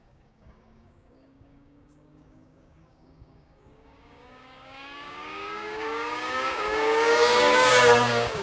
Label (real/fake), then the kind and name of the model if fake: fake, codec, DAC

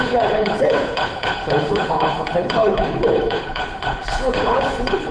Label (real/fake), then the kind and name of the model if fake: fake, codec, HILCodec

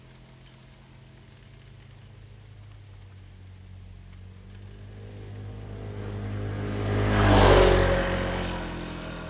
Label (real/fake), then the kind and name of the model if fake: real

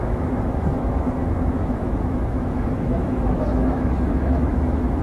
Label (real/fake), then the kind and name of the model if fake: fake, autoencoder, DAC-VAE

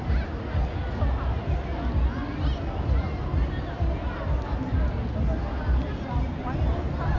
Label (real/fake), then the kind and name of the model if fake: real